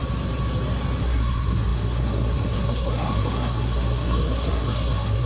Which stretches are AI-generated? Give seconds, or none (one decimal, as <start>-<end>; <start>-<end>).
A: 1.0-5.3